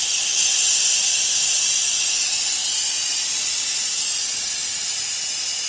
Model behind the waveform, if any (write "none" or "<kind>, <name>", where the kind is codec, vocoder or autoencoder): none